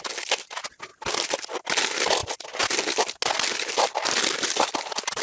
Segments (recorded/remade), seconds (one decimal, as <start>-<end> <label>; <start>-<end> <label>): 0.0-5.2 recorded